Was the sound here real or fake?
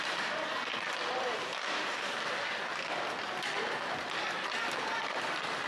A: real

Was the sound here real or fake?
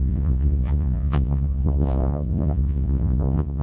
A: fake